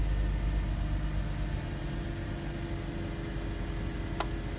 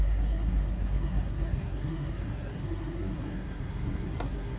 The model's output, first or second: second